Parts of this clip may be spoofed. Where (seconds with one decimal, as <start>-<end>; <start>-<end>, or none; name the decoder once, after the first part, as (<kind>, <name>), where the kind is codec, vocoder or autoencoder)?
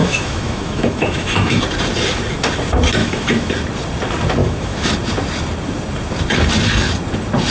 0.0-1.6 (autoencoder, DAC-VAE); 3.0-3.5; 4.4-4.9